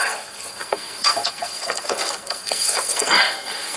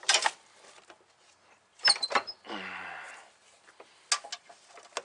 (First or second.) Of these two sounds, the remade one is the first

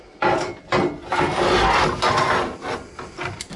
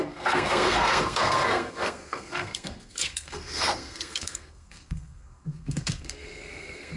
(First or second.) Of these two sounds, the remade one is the second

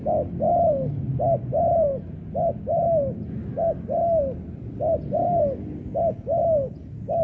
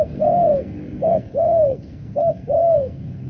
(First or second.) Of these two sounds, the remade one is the second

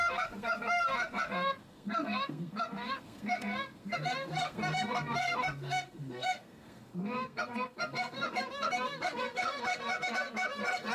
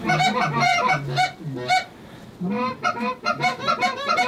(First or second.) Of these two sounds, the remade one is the first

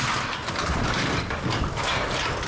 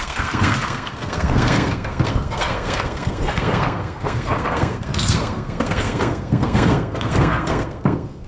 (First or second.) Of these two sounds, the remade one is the second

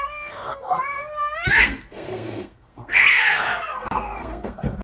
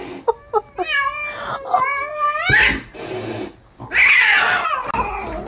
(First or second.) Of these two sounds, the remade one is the first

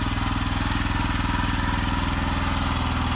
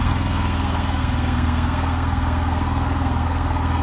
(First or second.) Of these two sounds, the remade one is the second